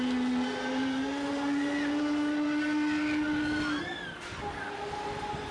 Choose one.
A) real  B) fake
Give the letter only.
A